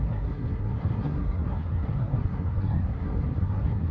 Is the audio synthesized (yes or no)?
yes